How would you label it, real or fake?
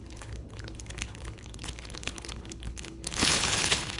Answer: fake